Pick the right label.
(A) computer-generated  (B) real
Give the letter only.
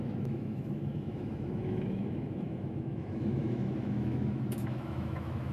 A